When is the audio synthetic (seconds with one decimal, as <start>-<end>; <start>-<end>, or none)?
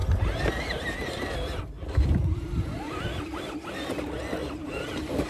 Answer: 0.0-1.6; 4.4-5.3